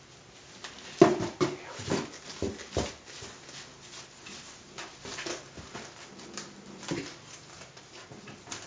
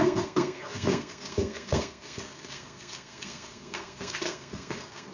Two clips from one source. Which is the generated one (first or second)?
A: second